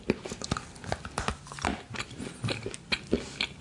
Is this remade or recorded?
recorded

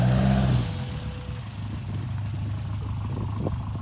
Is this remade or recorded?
recorded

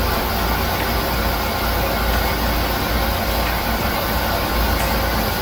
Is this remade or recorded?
recorded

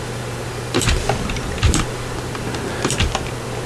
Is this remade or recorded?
recorded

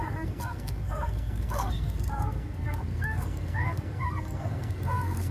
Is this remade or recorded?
remade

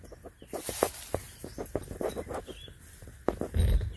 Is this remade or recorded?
recorded